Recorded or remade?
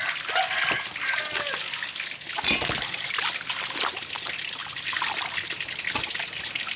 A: recorded